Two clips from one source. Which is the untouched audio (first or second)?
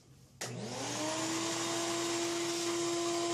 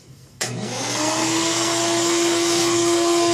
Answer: first